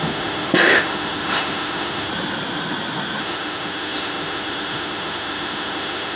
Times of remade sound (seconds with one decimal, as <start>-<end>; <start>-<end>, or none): 0.0-2.1; 3.2-6.2